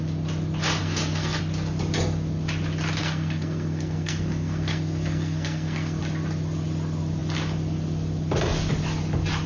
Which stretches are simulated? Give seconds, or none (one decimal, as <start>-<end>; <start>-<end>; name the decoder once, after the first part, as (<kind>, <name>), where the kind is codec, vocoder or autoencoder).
0.8-1.4 (codec, SNAC); 3.0-6.0